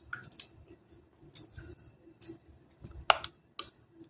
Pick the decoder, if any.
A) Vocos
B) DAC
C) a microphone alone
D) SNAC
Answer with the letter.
C